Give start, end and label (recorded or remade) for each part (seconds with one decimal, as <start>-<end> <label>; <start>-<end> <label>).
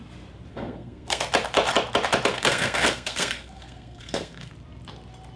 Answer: 0.0-0.5 recorded; 0.5-1.2 remade; 1.2-2.3 recorded; 2.3-4.5 remade; 4.5-5.4 recorded